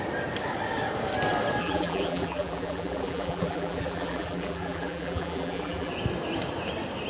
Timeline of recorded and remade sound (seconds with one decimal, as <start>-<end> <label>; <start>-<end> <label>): 0.0-1.6 recorded; 1.6-5.9 remade; 5.9-7.1 recorded